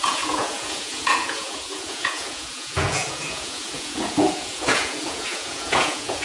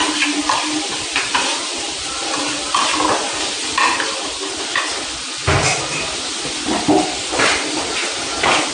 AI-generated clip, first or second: first